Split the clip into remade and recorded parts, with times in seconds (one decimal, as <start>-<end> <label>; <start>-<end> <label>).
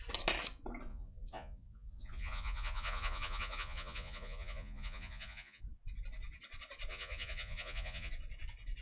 0.0-0.9 recorded; 0.9-5.6 remade; 5.6-6.9 recorded; 6.9-8.1 remade; 8.1-8.8 recorded